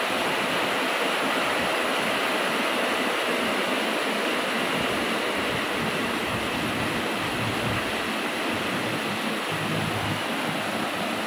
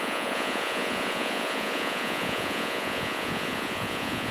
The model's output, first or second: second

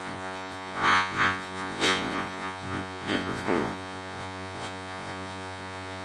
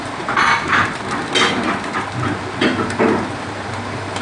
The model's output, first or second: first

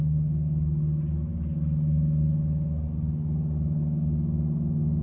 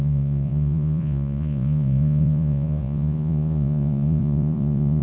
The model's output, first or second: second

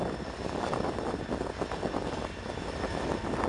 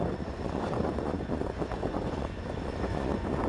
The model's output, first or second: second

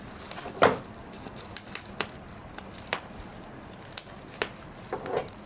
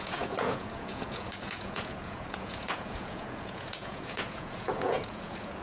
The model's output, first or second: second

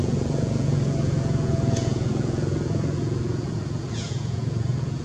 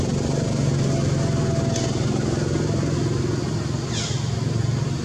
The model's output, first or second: first